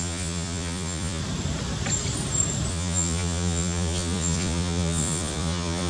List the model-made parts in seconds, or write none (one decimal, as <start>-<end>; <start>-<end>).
0.0-1.2; 2.7-5.9